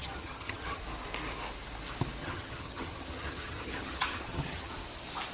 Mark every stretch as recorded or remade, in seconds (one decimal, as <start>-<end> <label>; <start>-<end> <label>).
0.0-0.8 remade; 0.8-2.2 recorded; 2.2-4.7 remade; 4.7-5.3 recorded